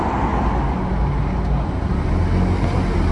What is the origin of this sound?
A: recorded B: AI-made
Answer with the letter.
A